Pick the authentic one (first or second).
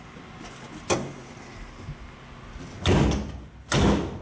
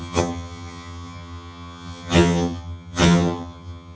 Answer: first